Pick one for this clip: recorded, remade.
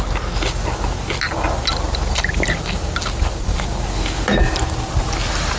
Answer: recorded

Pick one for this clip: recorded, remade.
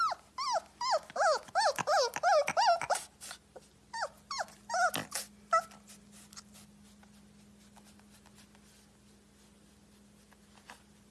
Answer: recorded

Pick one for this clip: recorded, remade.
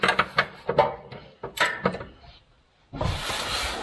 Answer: recorded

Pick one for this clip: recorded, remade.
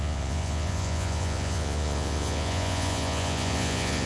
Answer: remade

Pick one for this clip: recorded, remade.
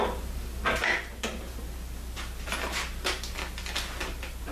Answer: recorded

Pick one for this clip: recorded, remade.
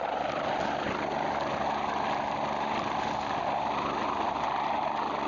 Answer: recorded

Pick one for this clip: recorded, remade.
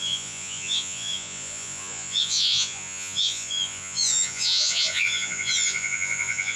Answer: remade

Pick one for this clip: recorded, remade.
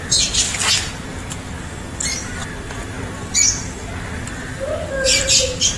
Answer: recorded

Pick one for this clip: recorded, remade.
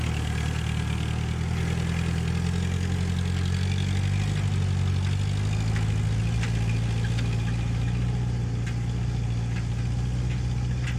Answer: recorded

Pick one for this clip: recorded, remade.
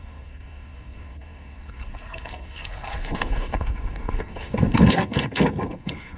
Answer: remade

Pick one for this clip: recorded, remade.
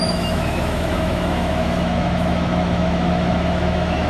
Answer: remade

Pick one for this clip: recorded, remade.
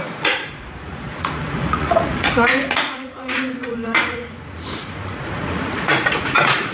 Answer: remade